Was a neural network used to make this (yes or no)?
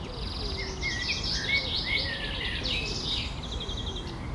no